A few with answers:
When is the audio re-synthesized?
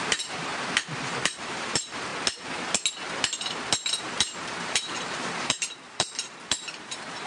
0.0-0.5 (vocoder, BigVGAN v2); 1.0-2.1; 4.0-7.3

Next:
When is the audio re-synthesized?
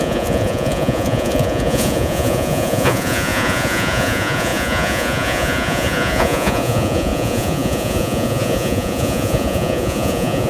0.0-10.5 (vocoder, Vocos)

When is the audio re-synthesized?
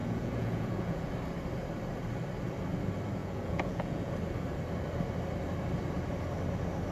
0.0-1.1 (vocoder, Vocos); 3.2-4.1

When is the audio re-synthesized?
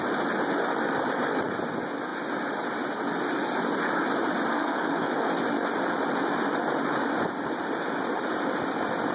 4.5-5.3 (codec, SNAC)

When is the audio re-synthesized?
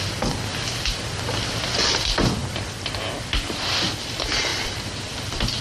4.5-5.6 (vocoder, BigVGAN v2)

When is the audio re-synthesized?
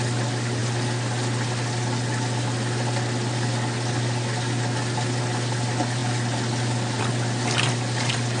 none